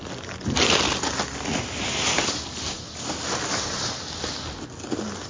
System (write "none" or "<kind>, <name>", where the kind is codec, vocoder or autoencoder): none